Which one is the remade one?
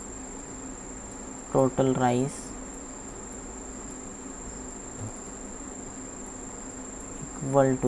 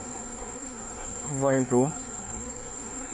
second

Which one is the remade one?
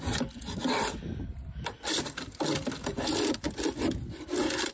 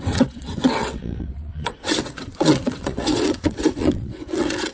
second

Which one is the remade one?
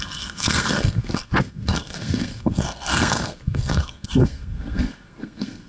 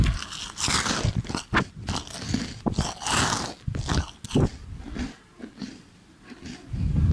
first